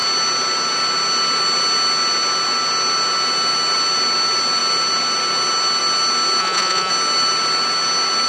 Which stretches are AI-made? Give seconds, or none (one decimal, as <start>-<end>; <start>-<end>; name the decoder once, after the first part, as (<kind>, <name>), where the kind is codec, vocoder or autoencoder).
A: 6.4-6.9 (vocoder, Vocos)